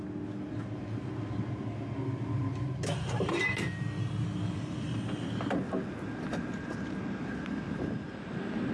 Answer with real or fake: real